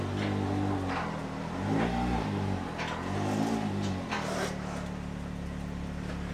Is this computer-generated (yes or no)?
no